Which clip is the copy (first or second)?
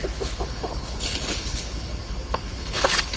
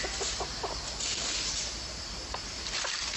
first